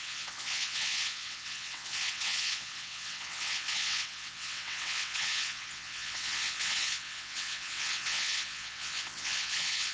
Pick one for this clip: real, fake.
fake